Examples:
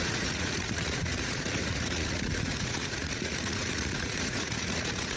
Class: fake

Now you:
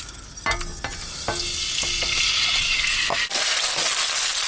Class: real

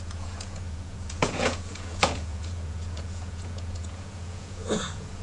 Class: fake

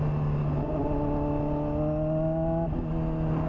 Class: real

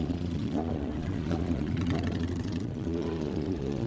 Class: fake